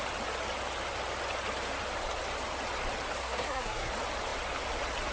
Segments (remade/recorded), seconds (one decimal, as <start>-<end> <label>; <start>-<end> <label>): 0.0-3.2 recorded; 3.2-3.9 remade; 3.9-5.1 recorded